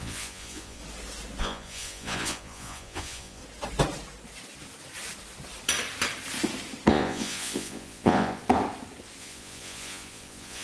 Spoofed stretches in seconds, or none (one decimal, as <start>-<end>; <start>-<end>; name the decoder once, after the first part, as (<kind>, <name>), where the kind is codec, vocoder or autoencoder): 0.0-0.8 (vocoder, Vocos); 1.4-3.4; 6.9-8.4; 9.2-10.6